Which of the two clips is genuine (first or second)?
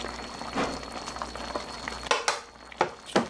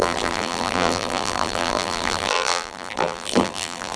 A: first